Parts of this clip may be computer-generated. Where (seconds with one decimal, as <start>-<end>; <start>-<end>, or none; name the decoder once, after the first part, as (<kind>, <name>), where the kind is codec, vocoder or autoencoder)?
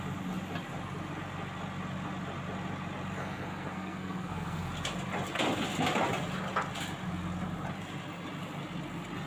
3.2-4.7 (codec, SNAC)